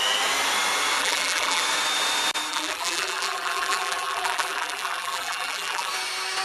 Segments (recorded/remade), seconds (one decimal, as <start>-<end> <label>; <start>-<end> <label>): 0.0-1.0 recorded; 1.0-1.6 remade; 1.6-2.5 recorded; 2.5-5.9 remade; 5.9-6.4 recorded